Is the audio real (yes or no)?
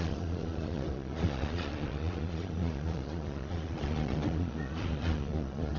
no